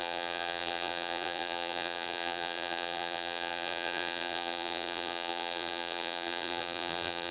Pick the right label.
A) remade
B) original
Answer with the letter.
A